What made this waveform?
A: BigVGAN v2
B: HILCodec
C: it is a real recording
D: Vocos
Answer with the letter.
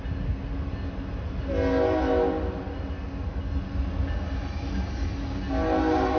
C